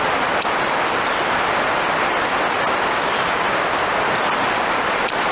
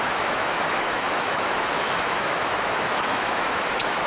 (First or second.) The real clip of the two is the first